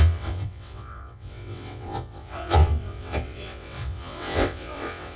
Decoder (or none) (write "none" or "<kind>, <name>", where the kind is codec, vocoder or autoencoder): vocoder, WaveNeXt